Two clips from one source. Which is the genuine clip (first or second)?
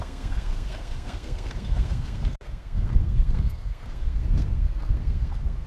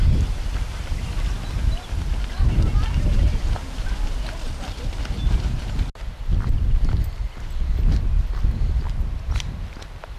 second